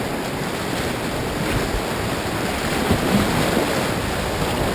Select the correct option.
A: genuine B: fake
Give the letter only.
A